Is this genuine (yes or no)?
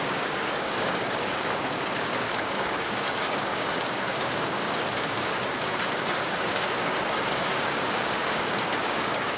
no